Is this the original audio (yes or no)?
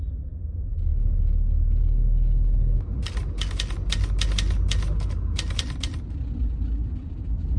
yes